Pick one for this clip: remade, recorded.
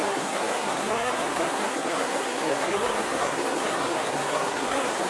remade